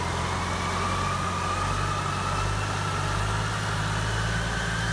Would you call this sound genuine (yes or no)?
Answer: yes